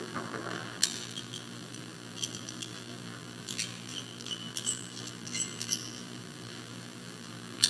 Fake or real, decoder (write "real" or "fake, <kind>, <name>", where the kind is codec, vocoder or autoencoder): fake, vocoder, BigVGAN v2